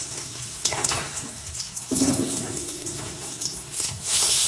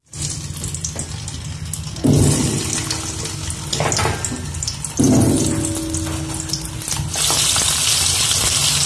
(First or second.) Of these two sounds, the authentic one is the second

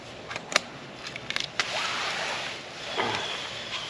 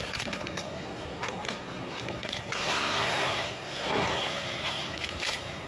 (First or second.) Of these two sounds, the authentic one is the first